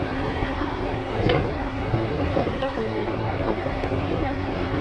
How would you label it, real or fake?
fake